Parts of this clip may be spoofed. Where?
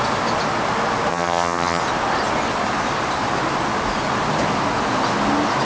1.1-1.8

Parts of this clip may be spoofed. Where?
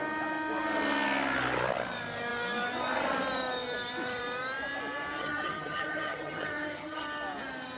5.2-7.0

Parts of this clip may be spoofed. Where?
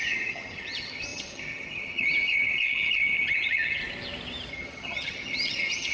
0.0-3.8; 4.5-5.9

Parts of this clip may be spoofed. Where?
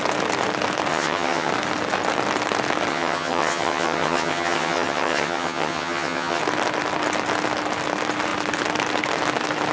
0.9-1.5; 2.9-6.4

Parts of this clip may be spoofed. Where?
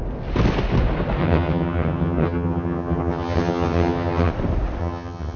1.2-4.3; 4.8-5.4